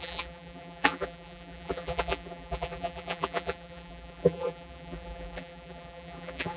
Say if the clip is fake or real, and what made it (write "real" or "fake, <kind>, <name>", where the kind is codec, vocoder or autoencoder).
fake, vocoder, BigVGAN v2